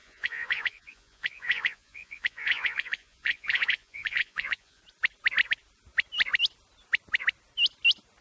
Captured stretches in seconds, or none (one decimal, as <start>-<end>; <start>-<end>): 4.8-8.2